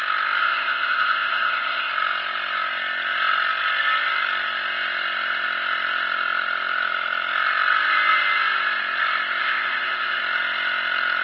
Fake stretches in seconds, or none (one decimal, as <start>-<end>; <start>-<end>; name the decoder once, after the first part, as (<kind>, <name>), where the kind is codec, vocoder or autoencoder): 0.4-1.9 (codec, ZipCodec); 9.4-10.2